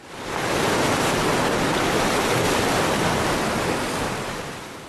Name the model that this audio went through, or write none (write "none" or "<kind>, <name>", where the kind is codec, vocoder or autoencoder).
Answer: none